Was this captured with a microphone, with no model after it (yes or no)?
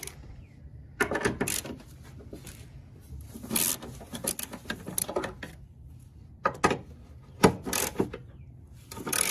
yes